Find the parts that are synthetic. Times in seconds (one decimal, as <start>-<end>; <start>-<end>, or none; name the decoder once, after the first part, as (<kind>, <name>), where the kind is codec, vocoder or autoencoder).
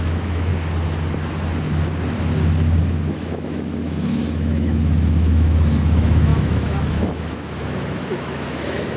0.0-0.5 (autoencoder, DAC-VAE); 2.8-9.0